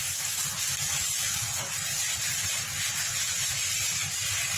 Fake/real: real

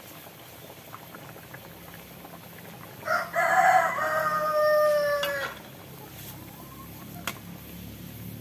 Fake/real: real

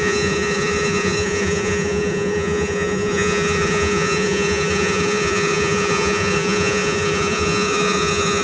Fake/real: fake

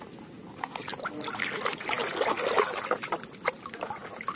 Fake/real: real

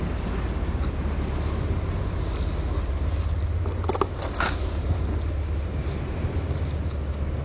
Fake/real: real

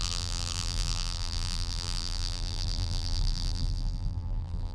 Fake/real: fake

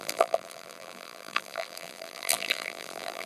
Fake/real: fake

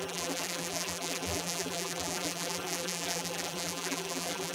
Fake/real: fake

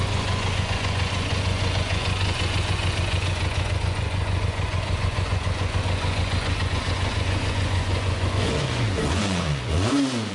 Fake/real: fake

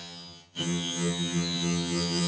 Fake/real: fake